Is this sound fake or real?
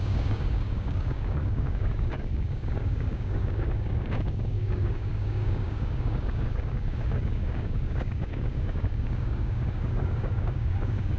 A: fake